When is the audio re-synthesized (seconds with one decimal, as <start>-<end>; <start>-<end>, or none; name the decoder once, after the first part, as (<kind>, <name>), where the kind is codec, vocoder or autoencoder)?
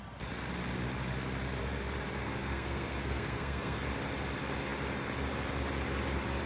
2.2-3.8 (codec, SNAC)